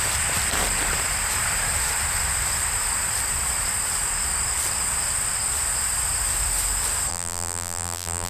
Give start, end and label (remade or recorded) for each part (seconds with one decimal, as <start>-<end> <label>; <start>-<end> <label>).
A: 0.0-7.1 recorded; 7.1-8.3 remade